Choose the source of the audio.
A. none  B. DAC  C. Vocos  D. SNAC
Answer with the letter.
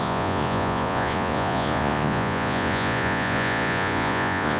C